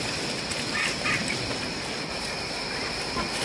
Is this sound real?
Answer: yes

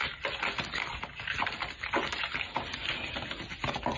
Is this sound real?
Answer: no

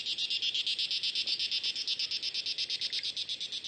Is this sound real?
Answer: yes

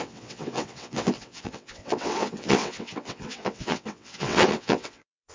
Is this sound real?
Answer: no